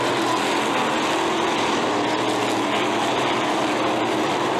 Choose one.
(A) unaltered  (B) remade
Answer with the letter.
A